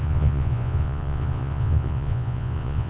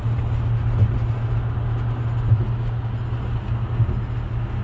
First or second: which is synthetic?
first